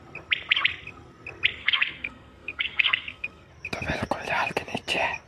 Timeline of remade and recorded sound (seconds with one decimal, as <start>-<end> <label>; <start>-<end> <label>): 0.0-1.6 recorded; 1.6-3.5 remade; 3.5-5.3 recorded